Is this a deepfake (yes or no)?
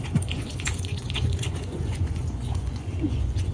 yes